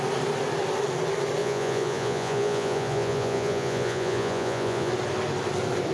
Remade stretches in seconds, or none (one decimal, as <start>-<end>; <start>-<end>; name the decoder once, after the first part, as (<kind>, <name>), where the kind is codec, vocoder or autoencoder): 1.4-4.9 (vocoder, Vocos)